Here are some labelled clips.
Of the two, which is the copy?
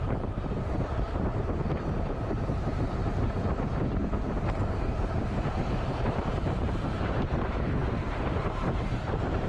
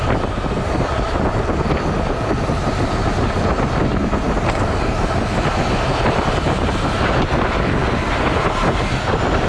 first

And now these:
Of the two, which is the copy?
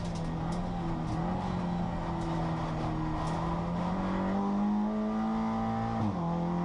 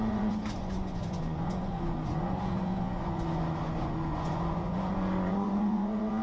second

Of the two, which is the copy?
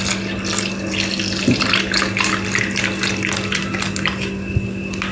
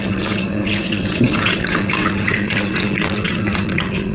second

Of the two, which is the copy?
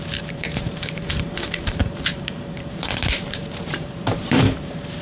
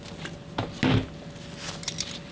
first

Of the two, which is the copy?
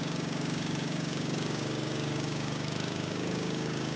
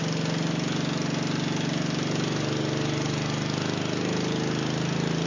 first